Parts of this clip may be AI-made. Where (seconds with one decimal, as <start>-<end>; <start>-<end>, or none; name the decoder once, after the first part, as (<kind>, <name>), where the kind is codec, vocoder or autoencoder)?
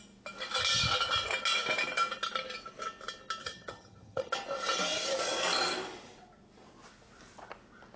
3.4-4.3 (vocoder, HiFi-GAN)